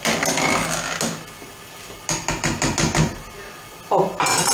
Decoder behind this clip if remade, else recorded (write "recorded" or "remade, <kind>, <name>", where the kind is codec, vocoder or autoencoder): recorded